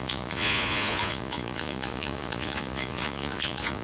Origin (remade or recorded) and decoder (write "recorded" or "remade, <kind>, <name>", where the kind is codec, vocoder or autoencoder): remade, vocoder, Vocos